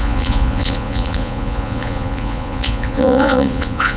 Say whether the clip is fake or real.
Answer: fake